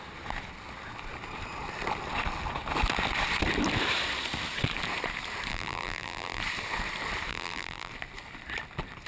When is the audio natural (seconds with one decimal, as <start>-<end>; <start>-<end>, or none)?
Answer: 0.0-5.5; 6.4-7.3; 7.9-9.1